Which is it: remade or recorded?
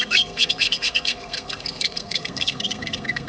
remade